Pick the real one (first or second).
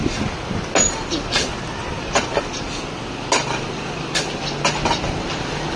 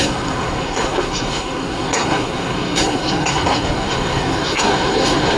first